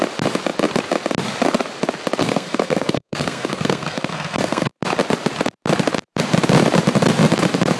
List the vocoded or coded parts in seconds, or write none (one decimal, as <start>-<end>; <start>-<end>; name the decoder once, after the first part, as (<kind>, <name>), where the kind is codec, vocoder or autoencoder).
2.2-4.7 (codec, SNAC)